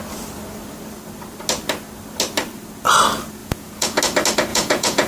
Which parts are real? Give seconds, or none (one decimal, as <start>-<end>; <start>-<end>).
0.0-3.4; 4.0-4.5